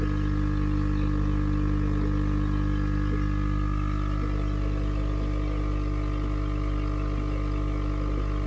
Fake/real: real